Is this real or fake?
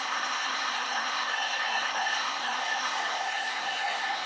fake